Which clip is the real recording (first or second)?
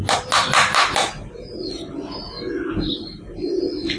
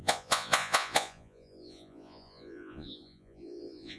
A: first